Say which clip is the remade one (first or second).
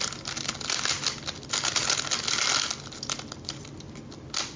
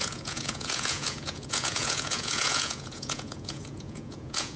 second